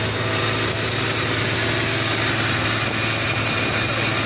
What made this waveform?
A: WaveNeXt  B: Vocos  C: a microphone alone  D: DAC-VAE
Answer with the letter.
C